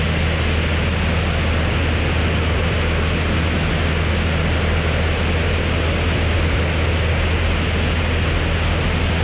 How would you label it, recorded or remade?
recorded